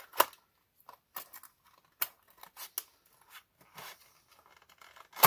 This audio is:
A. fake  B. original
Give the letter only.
B